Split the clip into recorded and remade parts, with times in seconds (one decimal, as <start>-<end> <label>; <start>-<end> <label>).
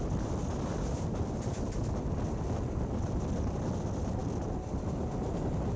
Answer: 0.0-5.8 recorded